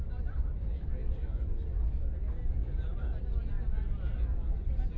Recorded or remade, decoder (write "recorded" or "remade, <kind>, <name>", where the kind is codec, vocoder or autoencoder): recorded